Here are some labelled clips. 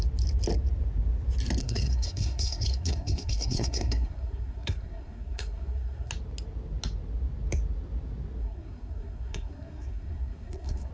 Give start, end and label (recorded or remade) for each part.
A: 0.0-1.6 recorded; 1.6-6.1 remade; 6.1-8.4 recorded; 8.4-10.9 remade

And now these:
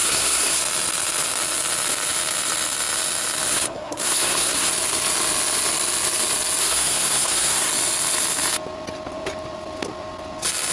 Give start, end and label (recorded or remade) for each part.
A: 0.0-0.6 remade; 0.6-3.5 recorded; 3.5-4.7 remade; 4.7-6.6 recorded; 6.6-7.7 remade; 7.7-10.7 recorded

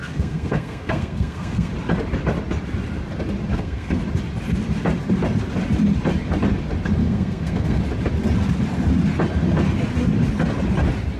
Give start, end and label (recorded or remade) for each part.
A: 0.0-1.7 remade; 1.7-3.5 recorded; 3.5-4.0 remade; 4.0-7.0 recorded; 7.0-7.8 remade; 7.8-11.2 recorded

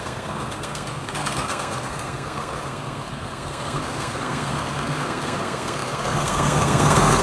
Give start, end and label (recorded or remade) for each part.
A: 0.0-7.2 remade